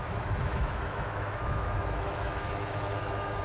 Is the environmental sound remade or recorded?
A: remade